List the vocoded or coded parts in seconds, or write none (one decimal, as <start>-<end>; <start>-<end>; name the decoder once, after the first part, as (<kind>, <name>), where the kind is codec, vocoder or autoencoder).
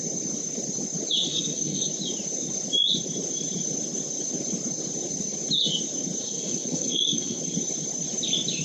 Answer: 1.3-1.9 (codec, SNAC); 6.2-7.4